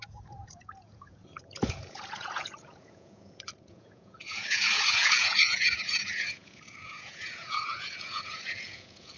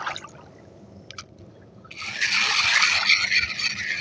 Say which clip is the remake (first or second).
first